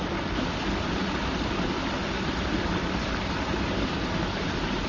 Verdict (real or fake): real